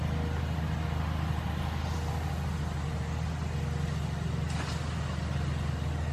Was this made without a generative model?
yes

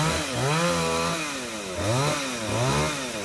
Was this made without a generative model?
yes